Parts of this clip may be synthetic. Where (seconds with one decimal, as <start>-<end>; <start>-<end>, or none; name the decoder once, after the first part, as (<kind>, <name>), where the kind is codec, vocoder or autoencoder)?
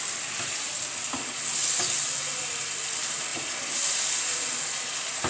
none